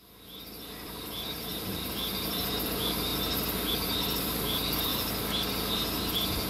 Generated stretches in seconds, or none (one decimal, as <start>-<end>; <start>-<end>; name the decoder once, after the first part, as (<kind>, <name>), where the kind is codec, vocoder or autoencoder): 0.0-3.1 (vocoder, BigVGAN v2); 3.7-4.9; 5.7-6.5